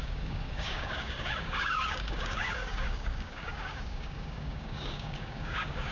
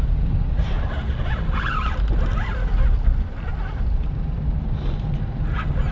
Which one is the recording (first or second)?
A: second